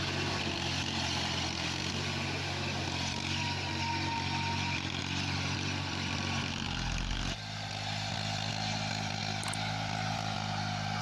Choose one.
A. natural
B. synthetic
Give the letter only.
A